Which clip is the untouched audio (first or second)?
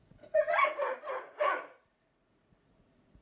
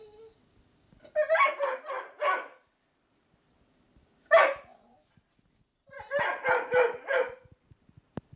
second